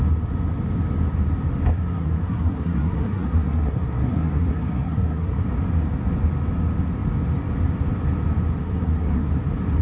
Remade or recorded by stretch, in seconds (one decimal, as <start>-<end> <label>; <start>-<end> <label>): 0.0-1.7 recorded; 1.7-5.4 remade; 5.4-8.6 recorded; 8.6-9.3 remade; 9.3-9.8 recorded